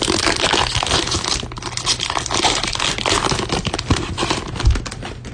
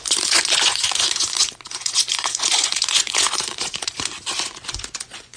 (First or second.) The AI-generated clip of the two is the second